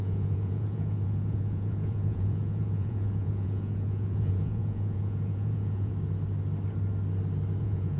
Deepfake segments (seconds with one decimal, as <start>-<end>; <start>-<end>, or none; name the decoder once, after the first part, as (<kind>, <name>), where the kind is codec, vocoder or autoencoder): 0.0-5.9 (vocoder, Vocos); 7.6-8.0

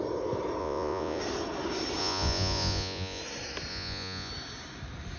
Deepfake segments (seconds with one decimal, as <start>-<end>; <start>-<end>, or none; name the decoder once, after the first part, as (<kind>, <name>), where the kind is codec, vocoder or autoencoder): 0.6-1.2 (vocoder, Vocos); 2.0-3.2; 3.7-4.3

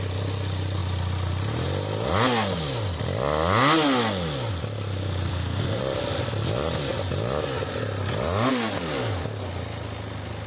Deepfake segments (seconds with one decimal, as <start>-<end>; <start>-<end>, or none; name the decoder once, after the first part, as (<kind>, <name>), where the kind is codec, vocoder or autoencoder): 5.3-5.8 (codec, SNAC)